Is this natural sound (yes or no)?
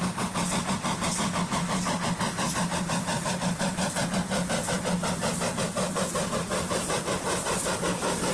yes